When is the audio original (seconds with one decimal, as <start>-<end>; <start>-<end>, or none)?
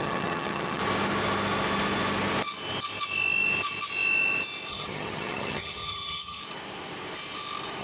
0.8-4.7; 6.4-7.8